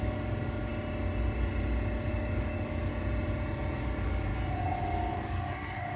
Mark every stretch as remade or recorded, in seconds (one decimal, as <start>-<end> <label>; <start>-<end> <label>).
0.0-0.7 remade; 0.7-2.1 recorded; 2.1-2.9 remade; 2.9-3.7 recorded; 3.7-4.3 remade; 4.3-4.8 recorded; 4.8-6.0 remade